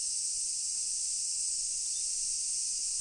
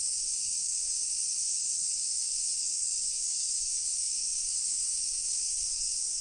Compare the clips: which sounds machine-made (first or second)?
second